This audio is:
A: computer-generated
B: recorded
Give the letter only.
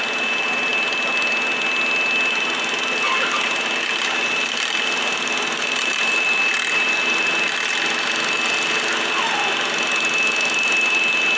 B